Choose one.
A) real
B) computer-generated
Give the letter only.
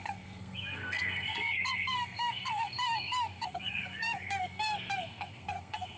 B